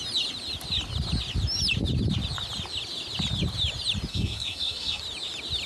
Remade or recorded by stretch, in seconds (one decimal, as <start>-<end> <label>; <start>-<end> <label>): 0.0-4.1 recorded; 4.1-5.0 remade; 5.0-5.7 recorded